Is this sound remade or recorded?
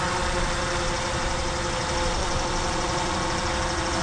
recorded